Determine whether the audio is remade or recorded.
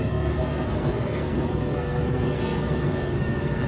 remade